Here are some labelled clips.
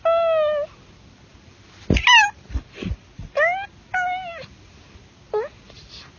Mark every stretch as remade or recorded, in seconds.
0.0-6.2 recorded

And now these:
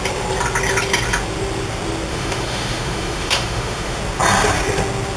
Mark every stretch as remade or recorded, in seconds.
0.0-2.1 recorded; 2.1-4.0 remade; 4.0-5.2 recorded

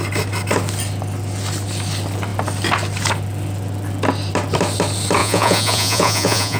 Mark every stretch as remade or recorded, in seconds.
0.0-5.2 recorded; 5.2-6.6 remade

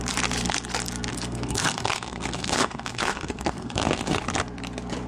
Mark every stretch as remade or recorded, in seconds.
0.0-1.1 recorded; 1.1-4.2 remade; 4.2-5.1 recorded

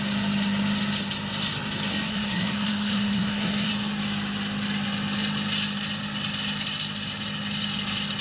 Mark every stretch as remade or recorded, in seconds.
0.0-1.9 recorded; 1.9-3.7 remade; 3.7-8.2 recorded

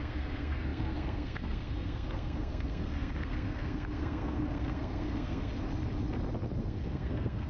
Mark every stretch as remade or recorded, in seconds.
0.0-5.5 remade; 5.5-6.6 recorded; 6.6-7.5 remade

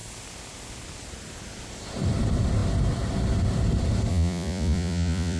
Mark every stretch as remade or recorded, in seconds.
0.0-4.1 recorded; 4.1-5.4 remade